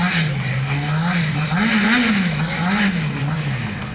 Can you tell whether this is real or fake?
real